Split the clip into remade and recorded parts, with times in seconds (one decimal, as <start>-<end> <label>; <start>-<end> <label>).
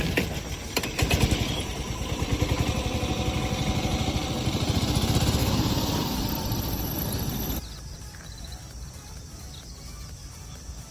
0.0-5.4 recorded; 5.4-6.2 remade; 6.2-10.9 recorded